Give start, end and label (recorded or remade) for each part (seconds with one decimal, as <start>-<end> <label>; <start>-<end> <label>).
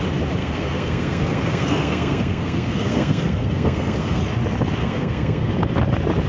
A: 0.0-0.4 recorded; 0.4-4.2 remade; 4.2-4.8 recorded; 4.8-5.5 remade; 5.5-6.3 recorded